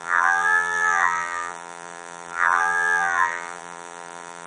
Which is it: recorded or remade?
remade